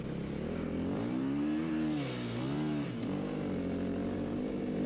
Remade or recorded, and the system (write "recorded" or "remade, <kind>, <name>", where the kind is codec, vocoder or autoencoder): recorded